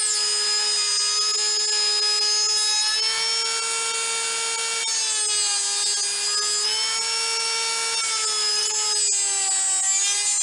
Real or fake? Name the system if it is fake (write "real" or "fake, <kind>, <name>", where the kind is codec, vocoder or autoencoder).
real